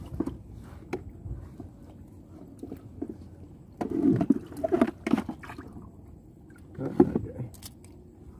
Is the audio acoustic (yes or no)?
yes